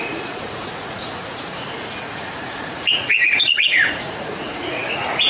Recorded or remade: remade